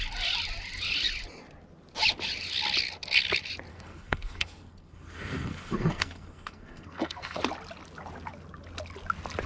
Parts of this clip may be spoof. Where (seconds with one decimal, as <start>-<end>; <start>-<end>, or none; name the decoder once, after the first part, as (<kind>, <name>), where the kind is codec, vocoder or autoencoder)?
3.7-7.4 (codec, SNAC)